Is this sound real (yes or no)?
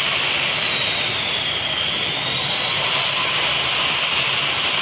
yes